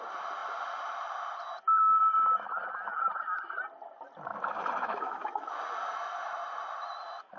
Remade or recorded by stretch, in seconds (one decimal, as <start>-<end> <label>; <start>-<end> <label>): 0.0-4.3 recorded; 4.3-5.6 remade; 5.6-7.4 recorded